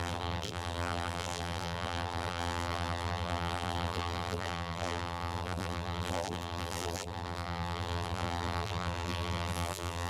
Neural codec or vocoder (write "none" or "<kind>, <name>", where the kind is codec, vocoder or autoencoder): vocoder, BigVGAN v2